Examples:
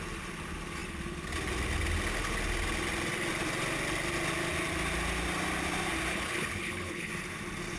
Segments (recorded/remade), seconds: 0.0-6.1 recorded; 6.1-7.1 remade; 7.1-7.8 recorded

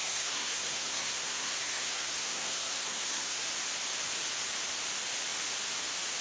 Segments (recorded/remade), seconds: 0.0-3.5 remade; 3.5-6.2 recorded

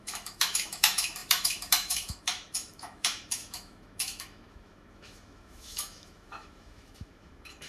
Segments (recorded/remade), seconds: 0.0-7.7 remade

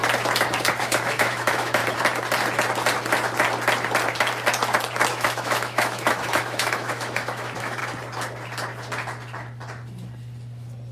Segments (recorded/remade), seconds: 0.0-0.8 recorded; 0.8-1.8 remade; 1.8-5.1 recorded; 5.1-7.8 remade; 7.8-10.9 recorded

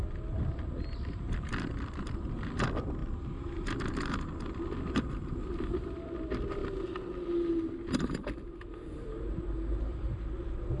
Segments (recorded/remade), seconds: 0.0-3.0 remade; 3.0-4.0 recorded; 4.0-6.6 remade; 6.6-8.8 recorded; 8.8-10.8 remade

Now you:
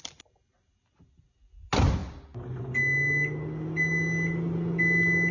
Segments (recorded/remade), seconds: 0.0-5.3 recorded

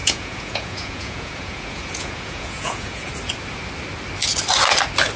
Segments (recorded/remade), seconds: 0.0-3.1 remade; 3.1-5.2 recorded

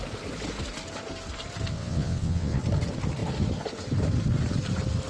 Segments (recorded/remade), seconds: 0.0-1.7 recorded; 1.7-2.6 remade; 2.6-5.1 recorded